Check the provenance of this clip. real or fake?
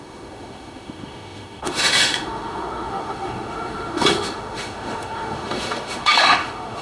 fake